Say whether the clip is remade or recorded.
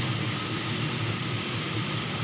recorded